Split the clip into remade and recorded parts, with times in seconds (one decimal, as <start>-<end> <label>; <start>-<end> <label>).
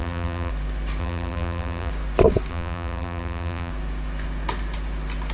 0.0-0.5 remade; 0.5-1.0 recorded; 1.0-1.9 remade; 1.9-2.5 recorded; 2.5-3.7 remade; 3.7-5.3 recorded